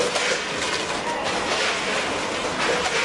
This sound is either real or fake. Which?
real